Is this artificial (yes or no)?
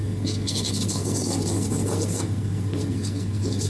yes